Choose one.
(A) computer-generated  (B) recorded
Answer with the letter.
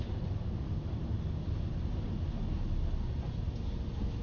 B